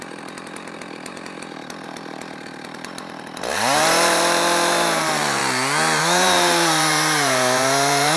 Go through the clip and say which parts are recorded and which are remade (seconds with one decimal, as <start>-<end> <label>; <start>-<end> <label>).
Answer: 0.0-5.4 remade; 5.4-6.0 recorded; 6.0-8.2 remade